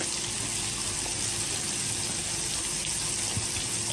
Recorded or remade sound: recorded